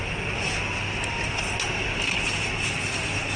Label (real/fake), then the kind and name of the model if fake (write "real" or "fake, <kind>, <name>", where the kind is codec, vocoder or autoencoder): real